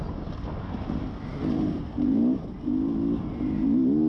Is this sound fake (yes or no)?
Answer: no